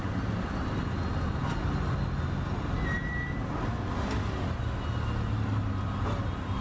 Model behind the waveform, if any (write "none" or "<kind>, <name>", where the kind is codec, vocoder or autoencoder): none